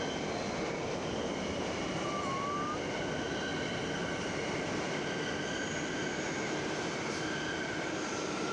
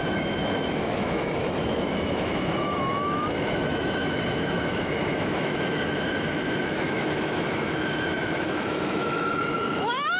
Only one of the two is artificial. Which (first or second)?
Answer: second